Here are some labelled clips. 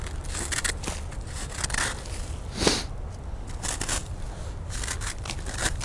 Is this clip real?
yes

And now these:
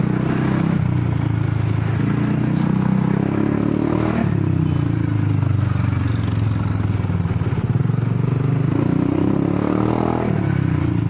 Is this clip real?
yes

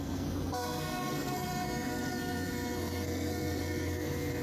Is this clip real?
no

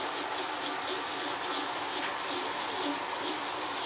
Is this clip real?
yes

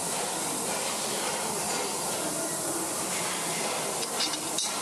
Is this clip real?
yes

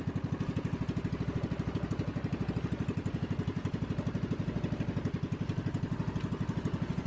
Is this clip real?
yes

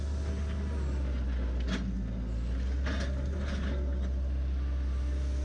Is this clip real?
yes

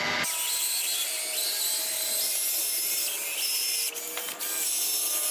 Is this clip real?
yes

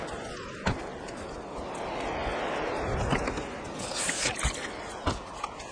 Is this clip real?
yes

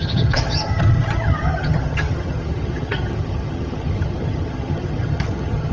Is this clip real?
no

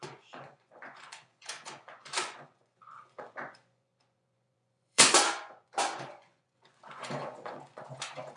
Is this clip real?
no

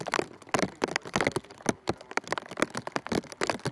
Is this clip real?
yes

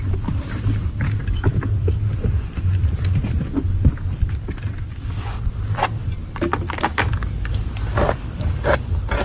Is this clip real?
yes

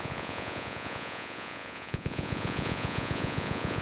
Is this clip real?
no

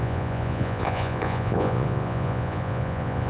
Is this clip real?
no